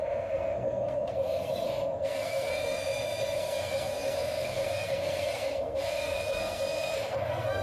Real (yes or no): no